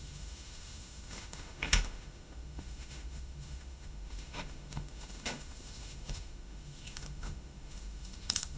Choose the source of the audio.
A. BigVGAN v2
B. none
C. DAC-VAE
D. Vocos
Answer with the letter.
C